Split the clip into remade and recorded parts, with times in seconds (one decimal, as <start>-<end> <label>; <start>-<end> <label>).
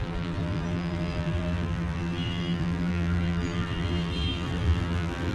0.0-5.3 remade